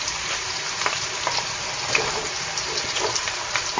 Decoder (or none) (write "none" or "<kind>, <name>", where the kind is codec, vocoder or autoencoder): vocoder, BigVGAN v2